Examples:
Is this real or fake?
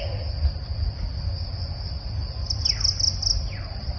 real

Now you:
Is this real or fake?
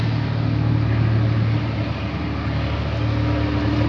real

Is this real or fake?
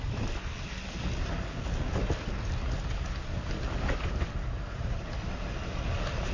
real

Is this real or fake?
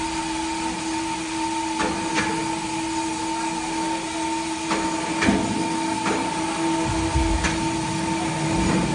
real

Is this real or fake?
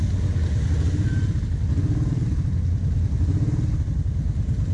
real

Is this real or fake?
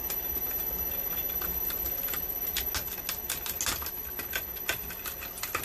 real